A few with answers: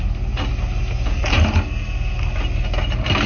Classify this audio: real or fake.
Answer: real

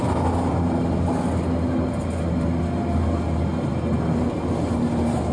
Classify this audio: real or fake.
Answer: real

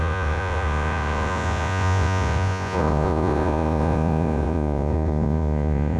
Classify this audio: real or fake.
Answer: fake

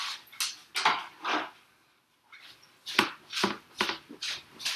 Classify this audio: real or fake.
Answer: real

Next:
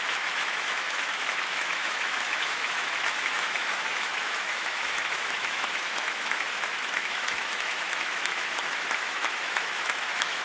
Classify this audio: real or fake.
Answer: fake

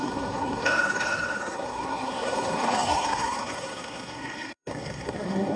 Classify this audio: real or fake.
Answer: fake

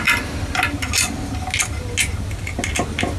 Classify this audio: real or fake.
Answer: real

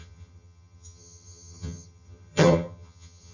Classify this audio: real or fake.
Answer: fake